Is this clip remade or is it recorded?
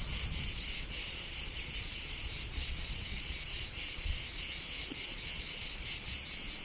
remade